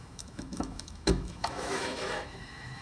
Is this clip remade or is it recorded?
remade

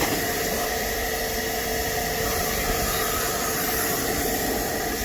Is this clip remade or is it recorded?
remade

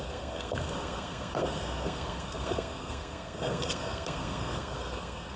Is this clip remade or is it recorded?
remade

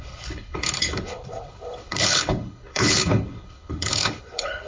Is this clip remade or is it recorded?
remade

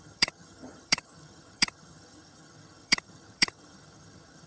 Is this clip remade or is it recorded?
remade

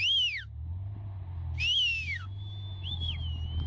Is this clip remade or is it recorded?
recorded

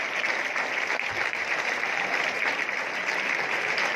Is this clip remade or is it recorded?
remade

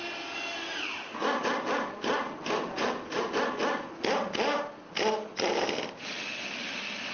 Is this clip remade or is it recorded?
recorded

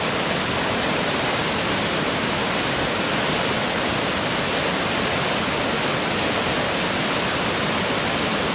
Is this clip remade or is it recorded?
recorded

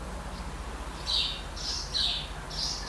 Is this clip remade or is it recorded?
recorded